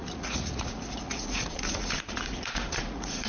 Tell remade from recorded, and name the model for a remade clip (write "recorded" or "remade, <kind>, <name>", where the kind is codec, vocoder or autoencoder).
remade, vocoder, Vocos